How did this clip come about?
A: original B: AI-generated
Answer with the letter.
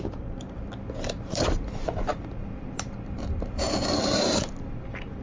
B